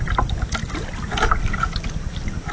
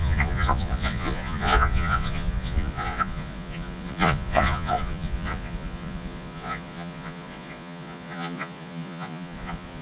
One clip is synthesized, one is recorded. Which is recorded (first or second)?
first